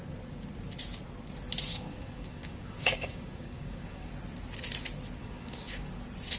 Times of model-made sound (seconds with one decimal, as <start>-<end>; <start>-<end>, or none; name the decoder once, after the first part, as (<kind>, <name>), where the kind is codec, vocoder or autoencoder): 1.7-4.1 (codec, DAC); 5.2-5.9